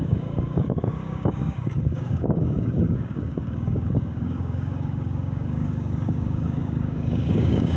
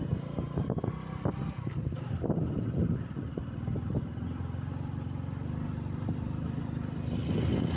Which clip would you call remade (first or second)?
first